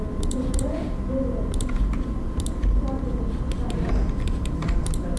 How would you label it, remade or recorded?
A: recorded